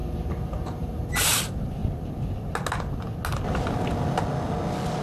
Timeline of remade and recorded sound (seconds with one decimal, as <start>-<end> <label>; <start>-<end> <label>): 0.0-1.8 remade; 1.8-5.0 recorded